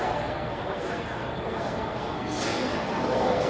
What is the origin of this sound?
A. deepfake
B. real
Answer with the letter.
A